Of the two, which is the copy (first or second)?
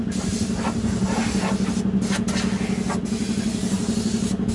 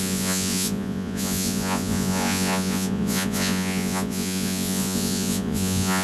second